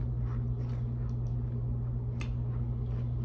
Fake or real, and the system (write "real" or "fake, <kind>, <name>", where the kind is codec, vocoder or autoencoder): real